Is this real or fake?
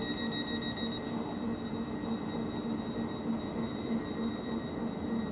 real